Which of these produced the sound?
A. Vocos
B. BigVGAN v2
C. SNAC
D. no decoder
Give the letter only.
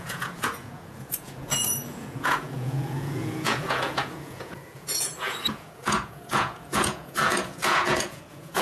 A